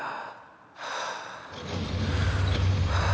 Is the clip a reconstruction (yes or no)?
no